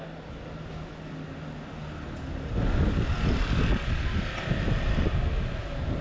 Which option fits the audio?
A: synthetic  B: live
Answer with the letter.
B